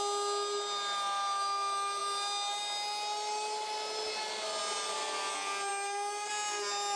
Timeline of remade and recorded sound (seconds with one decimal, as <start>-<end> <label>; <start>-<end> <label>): 0.0-7.0 recorded